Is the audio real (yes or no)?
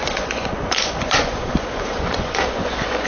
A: no